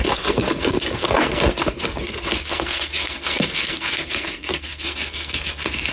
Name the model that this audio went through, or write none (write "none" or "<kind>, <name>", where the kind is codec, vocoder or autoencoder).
codec, SNAC